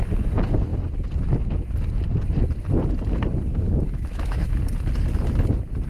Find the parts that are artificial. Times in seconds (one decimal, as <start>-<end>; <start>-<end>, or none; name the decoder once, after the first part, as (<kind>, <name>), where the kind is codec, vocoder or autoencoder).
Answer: 3.5-4.6 (autoencoder, DAC-VAE)